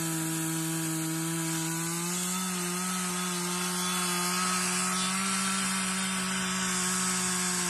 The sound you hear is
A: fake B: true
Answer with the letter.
B